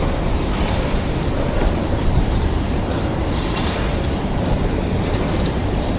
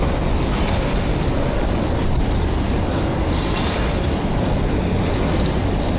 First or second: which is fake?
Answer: first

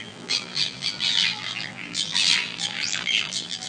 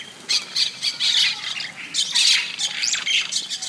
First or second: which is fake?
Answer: first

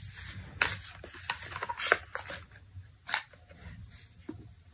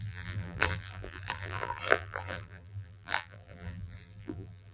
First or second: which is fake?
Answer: second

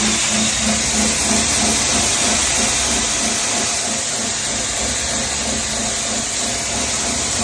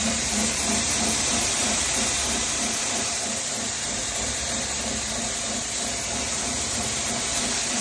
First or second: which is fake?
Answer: second